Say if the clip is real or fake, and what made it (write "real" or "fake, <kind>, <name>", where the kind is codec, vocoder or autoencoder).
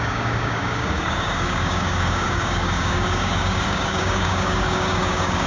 fake, codec, DAC